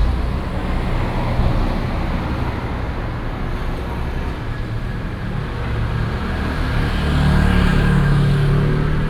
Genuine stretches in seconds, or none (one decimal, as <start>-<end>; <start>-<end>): 0.0-7.7; 8.3-9.1